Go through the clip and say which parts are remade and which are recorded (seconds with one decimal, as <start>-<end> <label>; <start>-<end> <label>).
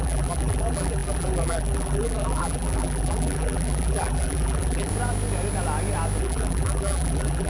0.0-4.9 remade; 4.9-6.2 recorded; 6.2-7.5 remade